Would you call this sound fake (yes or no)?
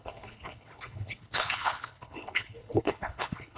yes